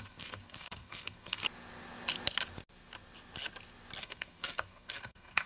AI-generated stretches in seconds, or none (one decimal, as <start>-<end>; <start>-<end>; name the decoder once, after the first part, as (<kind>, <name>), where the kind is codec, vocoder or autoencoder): 0.0-1.4 (codec, SNAC); 4.0-5.5